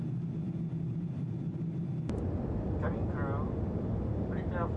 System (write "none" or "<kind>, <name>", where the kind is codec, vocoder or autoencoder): none